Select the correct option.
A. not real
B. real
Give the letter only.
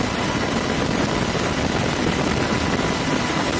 B